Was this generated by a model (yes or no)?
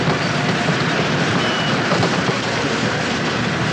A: yes